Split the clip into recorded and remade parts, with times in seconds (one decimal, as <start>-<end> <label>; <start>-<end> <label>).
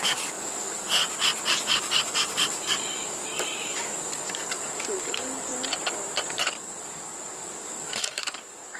0.0-1.0 remade; 1.0-1.6 recorded; 1.6-5.5 remade; 5.5-6.3 recorded; 6.3-8.8 remade